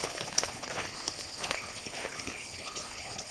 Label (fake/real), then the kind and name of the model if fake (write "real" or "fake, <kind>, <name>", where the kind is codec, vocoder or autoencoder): fake, codec, HILCodec